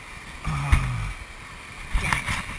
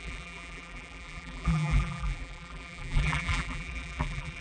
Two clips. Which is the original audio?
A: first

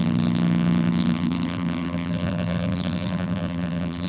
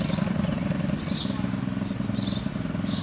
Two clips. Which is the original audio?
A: second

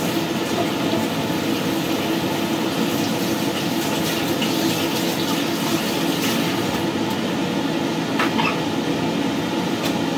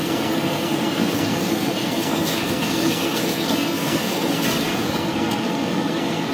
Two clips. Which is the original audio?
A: first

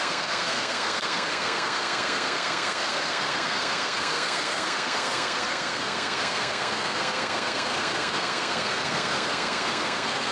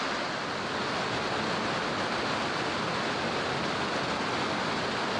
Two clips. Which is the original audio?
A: second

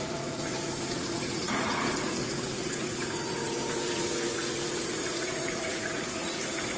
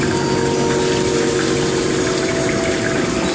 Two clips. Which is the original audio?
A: second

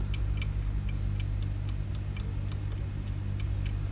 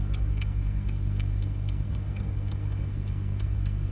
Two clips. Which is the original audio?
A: first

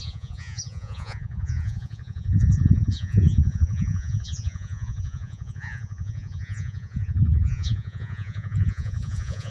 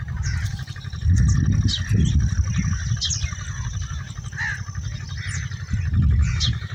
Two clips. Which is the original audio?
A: second